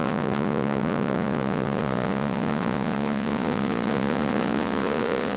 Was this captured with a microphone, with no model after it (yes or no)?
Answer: no